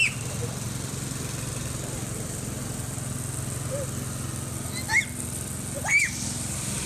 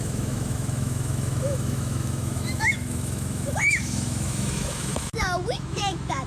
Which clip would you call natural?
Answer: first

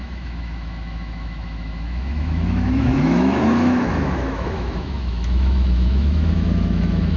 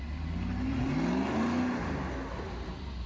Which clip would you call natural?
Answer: second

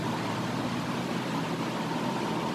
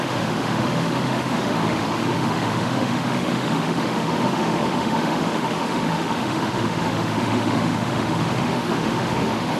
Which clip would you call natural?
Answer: first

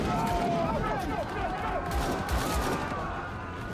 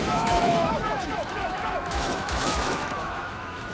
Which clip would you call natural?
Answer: first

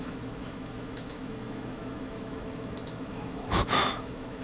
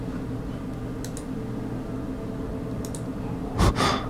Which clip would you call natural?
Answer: second